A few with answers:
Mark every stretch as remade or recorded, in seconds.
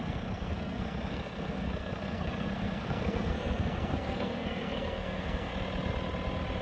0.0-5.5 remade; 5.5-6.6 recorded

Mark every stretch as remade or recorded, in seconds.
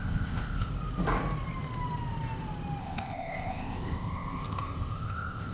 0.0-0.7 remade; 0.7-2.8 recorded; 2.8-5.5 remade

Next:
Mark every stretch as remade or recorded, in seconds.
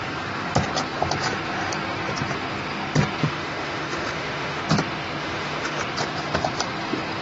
0.0-3.2 recorded; 3.2-4.6 remade; 4.6-5.2 recorded; 5.2-5.8 remade; 5.8-7.2 recorded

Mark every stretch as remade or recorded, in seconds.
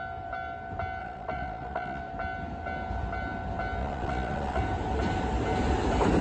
0.0-1.0 recorded; 1.0-2.0 remade; 2.0-3.8 recorded; 3.8-4.6 remade; 4.6-6.2 recorded